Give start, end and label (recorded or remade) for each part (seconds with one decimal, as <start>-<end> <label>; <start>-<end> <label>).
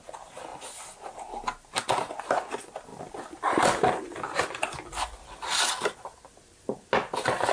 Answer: 0.0-7.5 recorded